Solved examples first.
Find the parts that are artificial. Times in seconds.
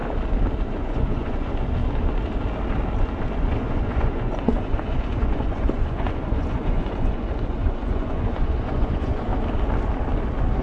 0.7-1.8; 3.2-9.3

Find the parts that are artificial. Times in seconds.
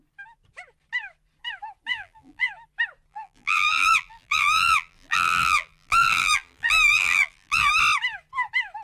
1.9-2.5; 3.1-7.7